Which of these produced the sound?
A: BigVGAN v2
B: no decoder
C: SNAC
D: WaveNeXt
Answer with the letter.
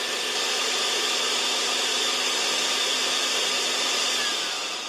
B